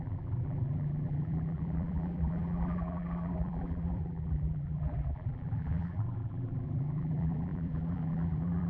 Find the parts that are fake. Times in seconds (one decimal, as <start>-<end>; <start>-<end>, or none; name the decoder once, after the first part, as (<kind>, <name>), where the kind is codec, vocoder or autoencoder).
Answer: 0.0-8.7 (vocoder, BigVGAN v2)